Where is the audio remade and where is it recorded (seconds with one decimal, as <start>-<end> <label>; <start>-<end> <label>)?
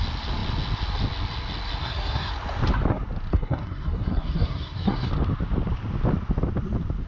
0.0-1.8 recorded; 1.8-2.3 remade; 2.3-3.3 recorded; 3.3-5.1 remade; 5.1-7.1 recorded